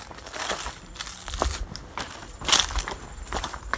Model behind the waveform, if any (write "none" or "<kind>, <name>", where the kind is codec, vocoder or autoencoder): none